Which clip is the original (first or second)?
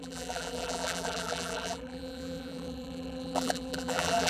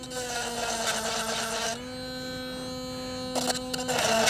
second